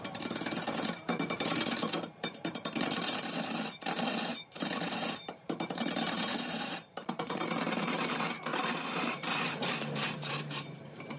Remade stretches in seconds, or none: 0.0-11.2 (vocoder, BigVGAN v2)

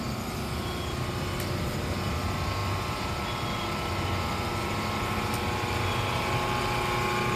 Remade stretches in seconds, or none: none

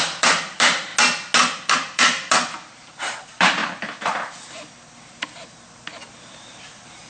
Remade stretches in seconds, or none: 0.0-0.9 (vocoder, BigVGAN v2); 1.7-3.6; 6.2-7.1

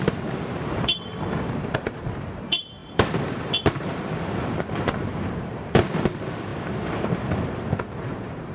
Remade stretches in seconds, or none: 0.0-8.5 (vocoder, BigVGAN v2)

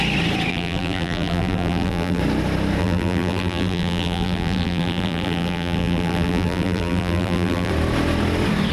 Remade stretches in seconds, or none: 0.5-2.2 (vocoder, BigVGAN v2); 2.8-7.7

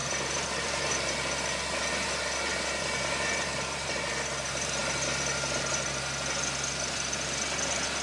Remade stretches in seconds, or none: 0.0-0.9 (vocoder, BigVGAN v2); 2.5-3.9

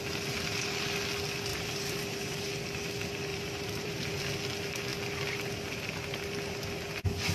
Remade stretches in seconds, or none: 1.5-2.5 (vocoder, BigVGAN v2); 3.3-4.2